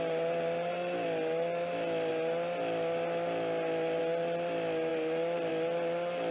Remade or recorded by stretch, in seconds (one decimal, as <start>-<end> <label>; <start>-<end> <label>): 0.0-6.3 recorded